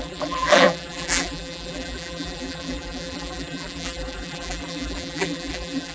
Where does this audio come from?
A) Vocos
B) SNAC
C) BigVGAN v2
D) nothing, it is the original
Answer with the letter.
C